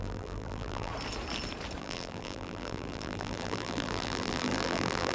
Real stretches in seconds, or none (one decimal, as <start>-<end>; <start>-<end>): 0.9-1.8